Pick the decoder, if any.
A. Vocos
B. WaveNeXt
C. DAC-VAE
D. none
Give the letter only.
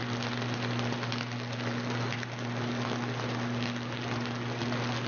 D